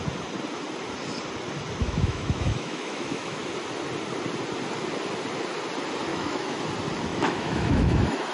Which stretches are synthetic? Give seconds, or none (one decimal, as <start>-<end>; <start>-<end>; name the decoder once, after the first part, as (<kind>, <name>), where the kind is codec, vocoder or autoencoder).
1.8-3.4 (autoencoder, DAC-VAE); 6.1-6.6; 7.1-8.3